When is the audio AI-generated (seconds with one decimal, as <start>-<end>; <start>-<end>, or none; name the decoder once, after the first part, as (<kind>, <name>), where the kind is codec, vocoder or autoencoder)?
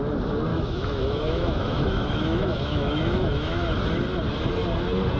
0.5-3.6 (autoencoder, DAC-VAE)